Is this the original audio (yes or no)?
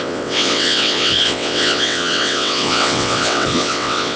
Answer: no